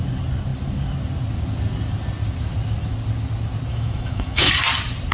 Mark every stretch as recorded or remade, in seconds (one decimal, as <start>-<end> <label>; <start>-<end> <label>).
0.0-3.7 recorded; 3.7-4.5 remade; 4.5-5.1 recorded